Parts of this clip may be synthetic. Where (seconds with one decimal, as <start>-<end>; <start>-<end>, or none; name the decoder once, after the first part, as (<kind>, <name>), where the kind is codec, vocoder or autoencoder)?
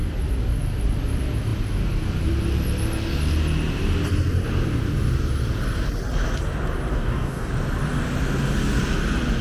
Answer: 6.9-7.5 (codec, DAC)